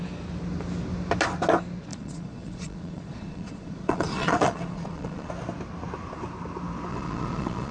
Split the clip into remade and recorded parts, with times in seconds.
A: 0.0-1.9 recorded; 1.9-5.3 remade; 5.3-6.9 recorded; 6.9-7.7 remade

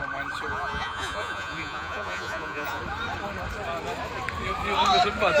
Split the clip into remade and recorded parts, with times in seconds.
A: 0.0-0.5 recorded; 0.5-2.8 remade; 2.8-5.4 recorded